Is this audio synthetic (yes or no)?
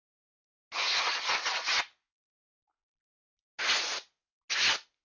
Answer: no